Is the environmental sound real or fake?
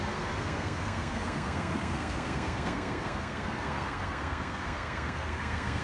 fake